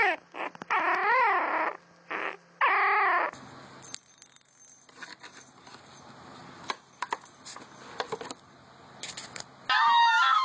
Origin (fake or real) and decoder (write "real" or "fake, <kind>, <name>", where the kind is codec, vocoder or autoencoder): real